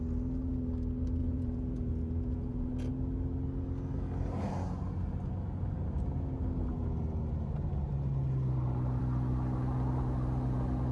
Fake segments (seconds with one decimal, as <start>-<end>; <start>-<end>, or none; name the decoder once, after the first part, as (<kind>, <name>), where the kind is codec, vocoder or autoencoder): 1.2-2.9 (vocoder, Vocos)